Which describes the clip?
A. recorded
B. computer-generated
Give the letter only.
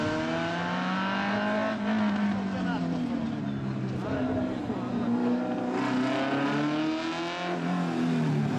A